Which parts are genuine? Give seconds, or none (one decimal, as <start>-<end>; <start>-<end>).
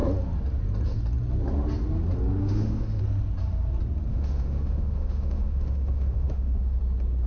0.0-2.4; 3.0-4.1; 6.8-7.3